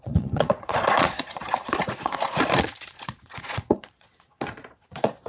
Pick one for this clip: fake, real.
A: fake